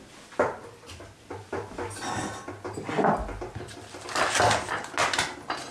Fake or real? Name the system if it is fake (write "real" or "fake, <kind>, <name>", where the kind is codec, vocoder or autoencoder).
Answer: real